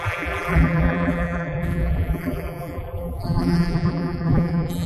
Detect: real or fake fake